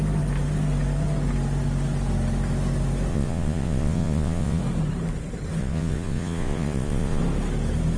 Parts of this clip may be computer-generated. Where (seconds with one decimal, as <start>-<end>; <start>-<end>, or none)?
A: 3.1-4.6; 5.6-7.2